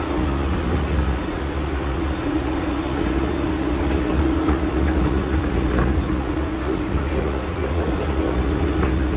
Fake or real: fake